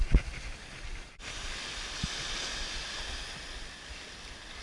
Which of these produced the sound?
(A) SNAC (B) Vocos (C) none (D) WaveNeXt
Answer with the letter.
C